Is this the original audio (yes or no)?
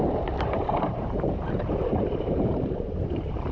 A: no